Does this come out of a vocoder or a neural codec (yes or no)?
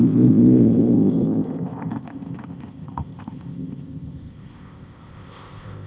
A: yes